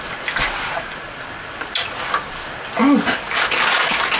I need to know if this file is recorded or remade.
recorded